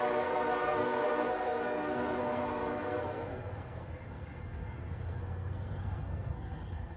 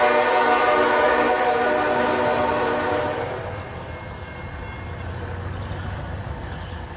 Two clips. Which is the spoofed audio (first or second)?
first